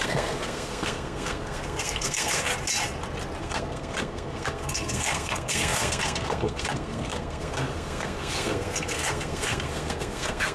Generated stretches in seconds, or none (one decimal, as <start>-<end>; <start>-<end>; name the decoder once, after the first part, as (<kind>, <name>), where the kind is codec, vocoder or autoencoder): 0.0-2.5 (codec, SNAC); 3.4-10.5